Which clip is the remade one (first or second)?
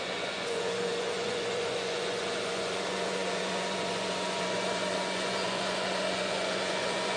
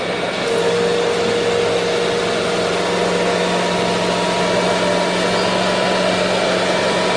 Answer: first